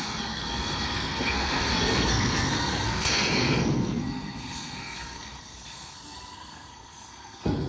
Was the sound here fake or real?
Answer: fake